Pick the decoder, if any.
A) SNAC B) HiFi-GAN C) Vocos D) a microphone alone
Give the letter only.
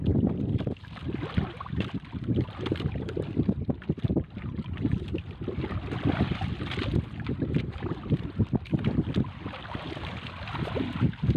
D